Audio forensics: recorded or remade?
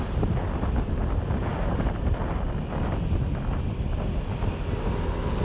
recorded